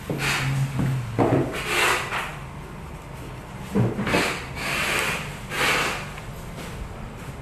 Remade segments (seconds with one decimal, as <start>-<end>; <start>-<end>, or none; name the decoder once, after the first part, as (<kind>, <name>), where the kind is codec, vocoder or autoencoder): none

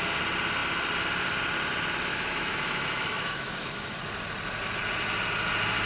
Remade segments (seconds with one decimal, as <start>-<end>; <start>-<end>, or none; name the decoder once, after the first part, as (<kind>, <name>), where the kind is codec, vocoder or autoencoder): 2.1-4.0 (autoencoder, DAC-VAE)